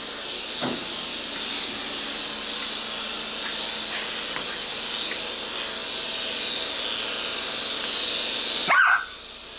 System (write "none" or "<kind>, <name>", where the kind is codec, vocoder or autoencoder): none